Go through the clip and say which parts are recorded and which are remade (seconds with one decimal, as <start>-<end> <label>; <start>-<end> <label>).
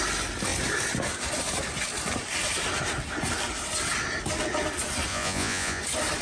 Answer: 0.0-5.1 recorded; 5.1-5.8 remade; 5.8-6.2 recorded